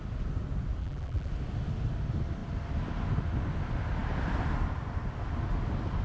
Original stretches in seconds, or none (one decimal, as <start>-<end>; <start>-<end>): 0.0-0.8; 1.3-6.0

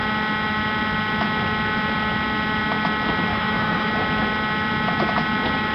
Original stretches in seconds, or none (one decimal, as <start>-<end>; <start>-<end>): 0.0-3.3; 3.9-5.7

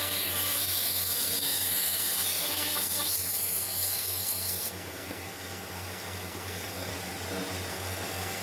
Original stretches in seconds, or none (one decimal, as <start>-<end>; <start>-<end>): 6.9-7.7

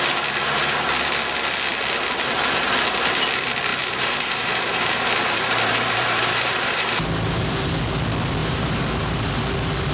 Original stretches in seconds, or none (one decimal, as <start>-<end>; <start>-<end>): 0.0-3.7; 7.7-8.4; 9.4-9.9